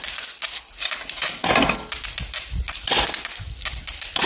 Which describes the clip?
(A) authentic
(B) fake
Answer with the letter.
A